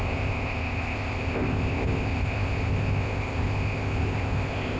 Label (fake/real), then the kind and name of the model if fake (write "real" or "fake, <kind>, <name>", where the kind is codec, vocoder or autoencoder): fake, codec, ZipCodec